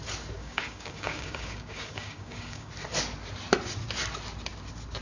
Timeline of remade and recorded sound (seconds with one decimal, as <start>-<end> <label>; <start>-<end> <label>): 0.0-0.4 recorded; 0.4-2.7 remade; 2.7-5.0 recorded